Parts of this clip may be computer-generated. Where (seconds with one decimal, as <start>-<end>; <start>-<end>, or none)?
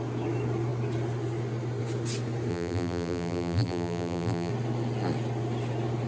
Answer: 2.5-4.5